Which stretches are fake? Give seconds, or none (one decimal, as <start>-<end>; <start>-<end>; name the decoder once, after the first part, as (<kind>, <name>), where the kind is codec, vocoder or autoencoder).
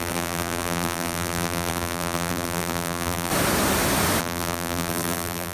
0.0-3.3 (vocoder, BigVGAN v2); 4.2-5.5